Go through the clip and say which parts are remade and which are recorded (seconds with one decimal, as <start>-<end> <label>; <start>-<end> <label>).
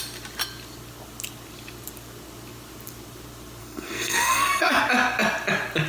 0.0-3.6 recorded; 3.6-4.8 remade; 4.8-5.9 recorded